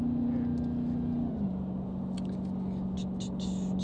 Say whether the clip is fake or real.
real